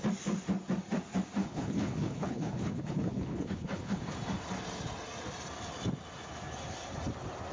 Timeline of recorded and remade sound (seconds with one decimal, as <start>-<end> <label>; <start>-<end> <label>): 0.0-1.4 recorded; 1.4-4.0 remade; 4.0-7.5 recorded